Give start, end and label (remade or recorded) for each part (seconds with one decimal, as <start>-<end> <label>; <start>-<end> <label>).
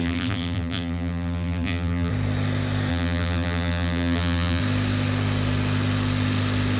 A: 0.0-2.1 remade; 2.1-2.9 recorded; 2.9-4.6 remade; 4.6-6.8 recorded